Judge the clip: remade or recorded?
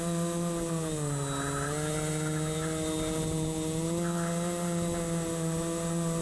recorded